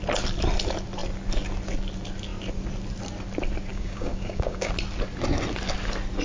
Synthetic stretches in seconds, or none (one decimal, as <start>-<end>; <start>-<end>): 3.7-4.7